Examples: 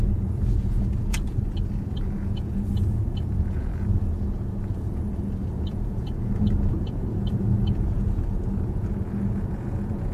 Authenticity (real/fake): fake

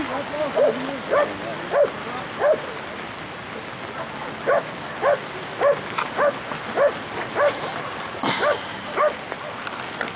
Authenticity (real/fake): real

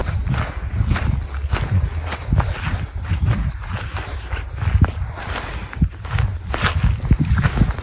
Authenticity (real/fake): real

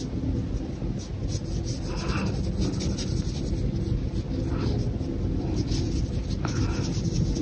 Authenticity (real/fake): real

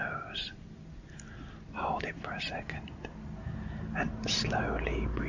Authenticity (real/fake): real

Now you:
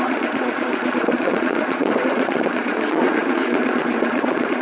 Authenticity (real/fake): fake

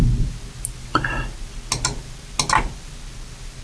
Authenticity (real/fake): real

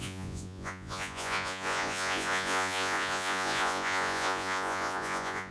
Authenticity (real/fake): fake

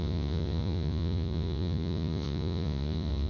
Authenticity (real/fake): fake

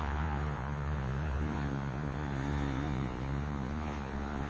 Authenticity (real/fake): fake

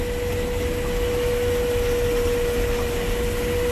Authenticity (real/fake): real